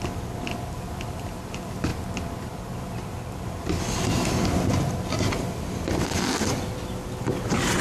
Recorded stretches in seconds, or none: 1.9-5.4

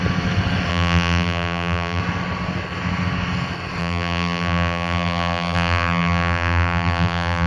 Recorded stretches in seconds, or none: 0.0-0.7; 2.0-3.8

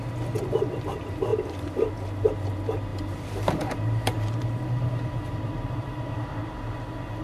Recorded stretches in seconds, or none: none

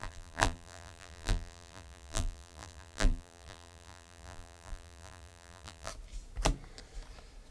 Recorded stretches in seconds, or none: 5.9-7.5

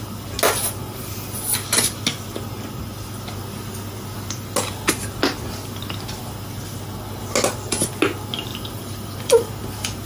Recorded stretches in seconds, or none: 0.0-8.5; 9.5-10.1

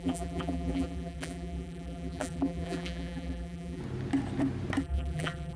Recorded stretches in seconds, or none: 3.8-4.8

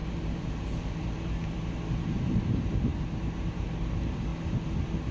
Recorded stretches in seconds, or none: 4.3-5.1

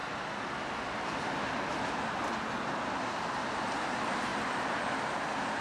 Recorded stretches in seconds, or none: 0.0-3.4; 4.3-5.6